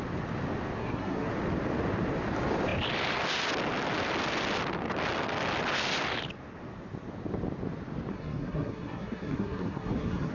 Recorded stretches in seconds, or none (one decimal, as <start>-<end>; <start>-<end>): 0.0-0.8; 1.3-8.1